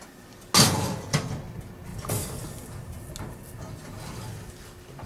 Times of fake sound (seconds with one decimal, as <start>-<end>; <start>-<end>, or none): none